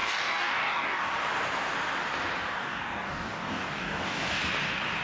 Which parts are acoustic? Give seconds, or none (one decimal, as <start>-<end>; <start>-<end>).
1.1-2.5; 4.4-5.0